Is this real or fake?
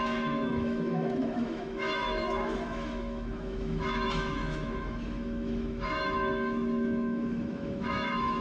fake